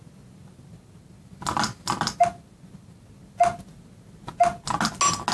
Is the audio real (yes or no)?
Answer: yes